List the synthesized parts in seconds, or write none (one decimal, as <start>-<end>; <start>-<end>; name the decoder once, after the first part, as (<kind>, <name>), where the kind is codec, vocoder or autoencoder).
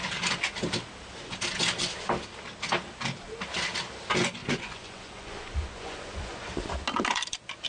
4.4-6.5 (vocoder, Vocos)